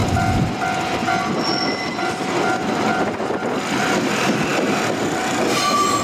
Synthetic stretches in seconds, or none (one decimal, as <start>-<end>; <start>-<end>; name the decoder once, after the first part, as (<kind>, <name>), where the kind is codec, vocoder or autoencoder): none